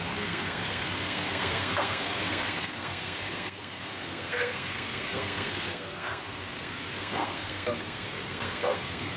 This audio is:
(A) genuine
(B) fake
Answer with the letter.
B